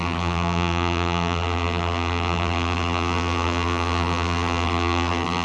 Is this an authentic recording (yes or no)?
no